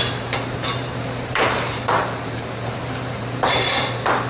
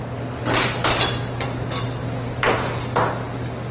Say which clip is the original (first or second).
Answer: second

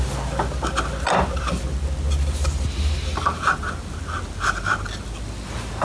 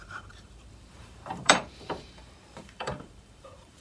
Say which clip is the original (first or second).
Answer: first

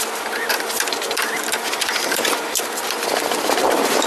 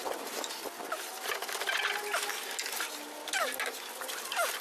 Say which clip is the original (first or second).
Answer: second